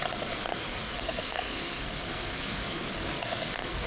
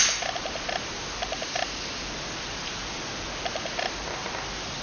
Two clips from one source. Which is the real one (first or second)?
second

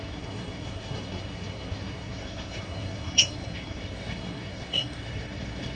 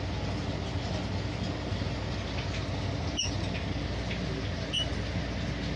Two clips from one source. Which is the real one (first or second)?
second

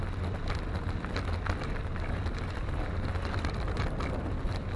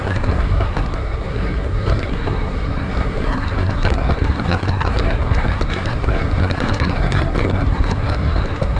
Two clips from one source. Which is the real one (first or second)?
first